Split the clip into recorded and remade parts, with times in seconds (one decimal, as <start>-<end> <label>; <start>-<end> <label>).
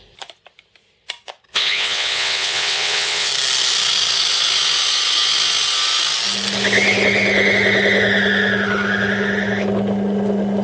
0.0-1.5 recorded; 1.5-3.3 remade; 3.3-10.6 recorded